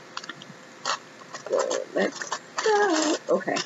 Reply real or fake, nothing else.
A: real